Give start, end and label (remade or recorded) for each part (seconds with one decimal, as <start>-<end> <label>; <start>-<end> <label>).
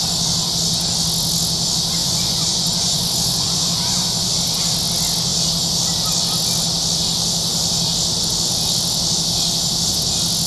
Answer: 0.0-2.0 recorded; 2.0-4.3 remade; 4.3-10.5 recorded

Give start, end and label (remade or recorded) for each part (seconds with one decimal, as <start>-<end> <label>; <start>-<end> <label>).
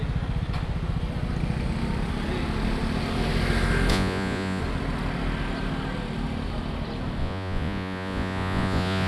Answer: 0.0-3.9 recorded; 3.9-4.6 remade; 4.6-7.2 recorded; 7.2-9.1 remade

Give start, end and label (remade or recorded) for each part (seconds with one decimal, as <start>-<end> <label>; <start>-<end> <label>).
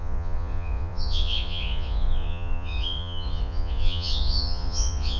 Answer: 0.0-5.2 remade